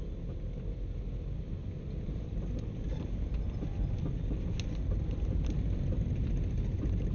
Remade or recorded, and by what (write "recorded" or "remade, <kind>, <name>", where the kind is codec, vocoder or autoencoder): recorded